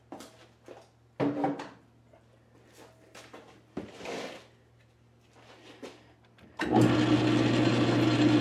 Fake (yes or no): no